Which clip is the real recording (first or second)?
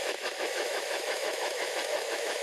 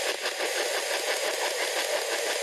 second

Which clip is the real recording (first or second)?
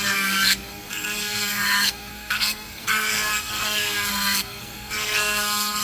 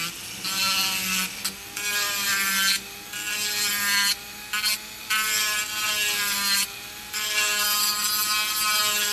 second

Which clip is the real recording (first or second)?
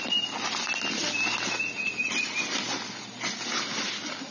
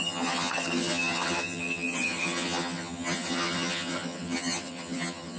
first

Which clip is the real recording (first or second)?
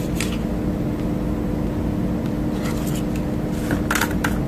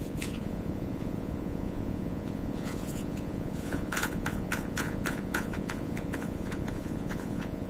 first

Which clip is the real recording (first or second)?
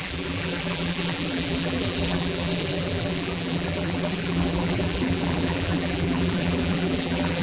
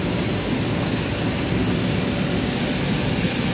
second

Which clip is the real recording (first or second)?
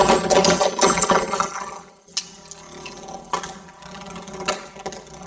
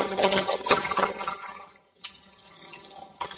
first